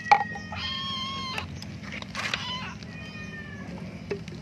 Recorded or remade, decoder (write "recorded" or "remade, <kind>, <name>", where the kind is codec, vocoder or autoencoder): recorded